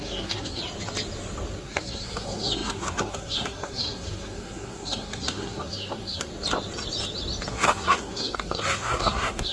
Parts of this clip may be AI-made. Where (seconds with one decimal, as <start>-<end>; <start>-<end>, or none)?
0.0-0.6; 1.6-6.3; 7.5-9.5